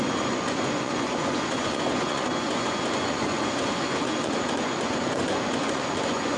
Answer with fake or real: fake